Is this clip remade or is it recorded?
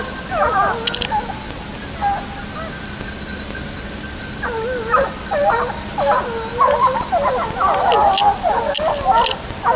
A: recorded